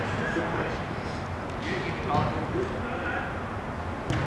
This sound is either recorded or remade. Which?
recorded